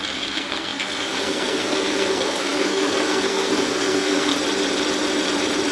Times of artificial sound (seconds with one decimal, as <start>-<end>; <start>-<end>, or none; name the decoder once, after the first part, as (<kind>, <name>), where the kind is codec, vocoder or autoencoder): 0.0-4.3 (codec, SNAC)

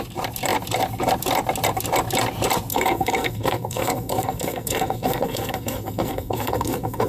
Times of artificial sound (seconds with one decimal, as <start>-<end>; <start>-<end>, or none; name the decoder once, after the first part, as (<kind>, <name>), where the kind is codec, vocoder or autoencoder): 2.7-7.1 (codec, SNAC)

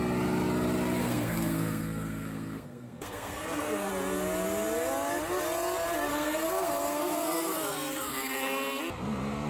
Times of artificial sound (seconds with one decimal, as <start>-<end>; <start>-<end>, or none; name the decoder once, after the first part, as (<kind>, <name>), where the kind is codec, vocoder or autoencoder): 1.0-3.9 (codec, SNAC); 6.1-8.8

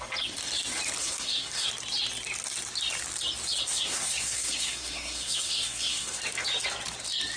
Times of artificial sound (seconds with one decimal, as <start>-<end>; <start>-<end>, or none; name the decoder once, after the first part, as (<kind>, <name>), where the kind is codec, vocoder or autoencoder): 1.0-1.7 (codec, SNAC); 3.6-6.2

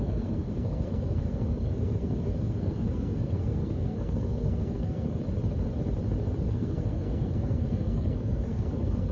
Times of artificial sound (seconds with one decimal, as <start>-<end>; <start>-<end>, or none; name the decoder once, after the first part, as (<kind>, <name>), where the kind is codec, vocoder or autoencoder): 0.0-5.2 (codec, SNAC); 6.5-9.1

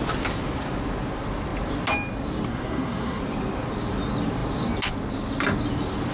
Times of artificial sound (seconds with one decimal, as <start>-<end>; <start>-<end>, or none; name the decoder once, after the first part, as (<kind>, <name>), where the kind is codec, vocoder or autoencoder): 2.5-3.2 (codec, SNAC)